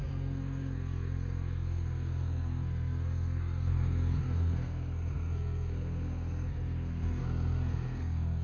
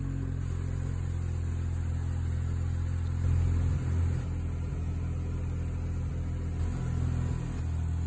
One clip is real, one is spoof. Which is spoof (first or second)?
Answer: first